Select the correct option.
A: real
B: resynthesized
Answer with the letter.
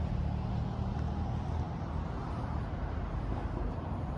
A